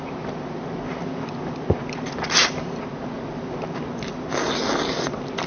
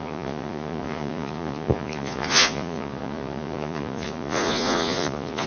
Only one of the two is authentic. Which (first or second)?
first